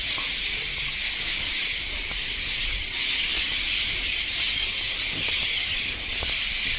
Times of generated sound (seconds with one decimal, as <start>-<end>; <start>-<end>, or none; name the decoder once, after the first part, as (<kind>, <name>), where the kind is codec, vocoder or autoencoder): none